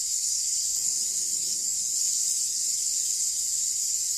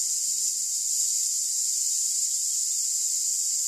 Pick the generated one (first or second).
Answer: first